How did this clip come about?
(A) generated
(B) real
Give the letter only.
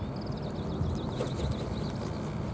B